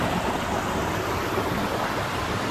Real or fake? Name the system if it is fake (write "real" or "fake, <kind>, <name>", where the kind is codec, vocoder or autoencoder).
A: real